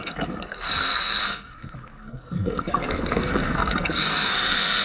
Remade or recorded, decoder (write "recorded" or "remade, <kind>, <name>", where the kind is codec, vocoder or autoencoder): remade, codec, SNAC